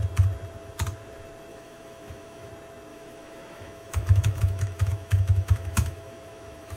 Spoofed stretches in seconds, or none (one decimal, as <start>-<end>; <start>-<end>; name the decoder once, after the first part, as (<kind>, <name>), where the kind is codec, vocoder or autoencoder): 1.5-2.5 (autoencoder, DAC-VAE); 2.9-6.8